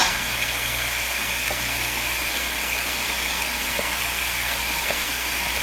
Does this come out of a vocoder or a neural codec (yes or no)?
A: yes